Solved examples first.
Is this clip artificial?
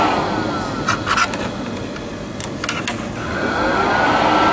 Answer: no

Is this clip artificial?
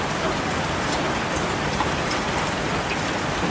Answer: no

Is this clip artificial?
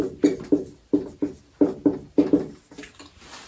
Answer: no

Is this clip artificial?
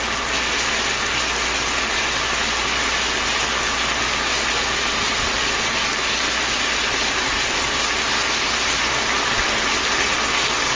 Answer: no